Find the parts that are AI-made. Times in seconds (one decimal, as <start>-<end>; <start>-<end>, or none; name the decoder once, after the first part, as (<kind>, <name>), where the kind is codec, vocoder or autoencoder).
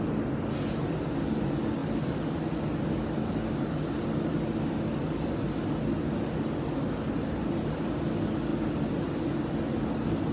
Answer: none